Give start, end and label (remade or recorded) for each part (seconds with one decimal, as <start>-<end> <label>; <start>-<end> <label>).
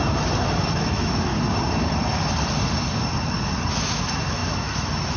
0.0-0.8 recorded; 0.8-1.3 remade; 1.3-3.7 recorded; 3.7-5.2 remade